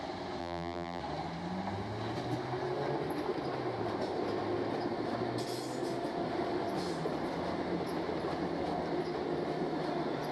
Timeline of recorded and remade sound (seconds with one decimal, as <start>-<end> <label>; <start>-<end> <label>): 0.0-0.4 recorded; 0.4-1.0 remade; 1.0-10.3 recorded